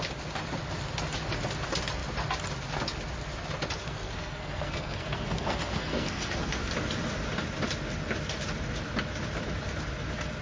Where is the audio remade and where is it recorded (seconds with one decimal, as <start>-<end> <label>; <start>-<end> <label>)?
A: 0.0-3.8 recorded; 3.8-6.7 remade; 6.7-10.4 recorded